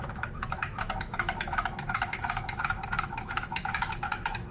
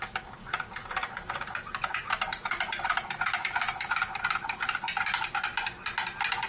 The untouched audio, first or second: second